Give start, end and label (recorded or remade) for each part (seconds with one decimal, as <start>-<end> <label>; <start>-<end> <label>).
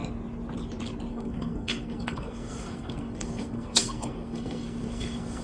0.0-1.1 recorded; 1.1-5.4 remade